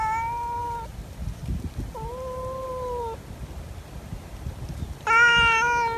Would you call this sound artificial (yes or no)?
no